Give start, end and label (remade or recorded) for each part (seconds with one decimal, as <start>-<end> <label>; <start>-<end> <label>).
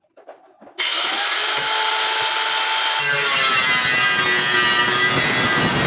0.0-5.9 recorded